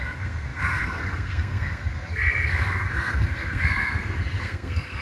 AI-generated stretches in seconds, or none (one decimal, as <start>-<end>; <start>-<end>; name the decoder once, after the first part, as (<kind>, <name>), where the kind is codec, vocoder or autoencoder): 0.0-5.0 (codec, SNAC)